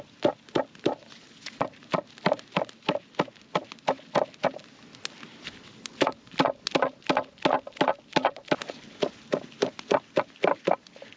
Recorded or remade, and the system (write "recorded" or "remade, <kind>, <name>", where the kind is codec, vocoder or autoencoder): recorded